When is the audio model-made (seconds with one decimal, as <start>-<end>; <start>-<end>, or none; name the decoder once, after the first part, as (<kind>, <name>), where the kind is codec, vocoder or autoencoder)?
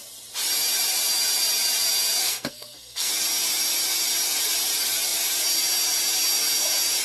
2.2-3.1 (codec, SNAC)